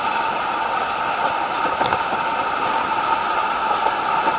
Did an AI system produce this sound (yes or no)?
no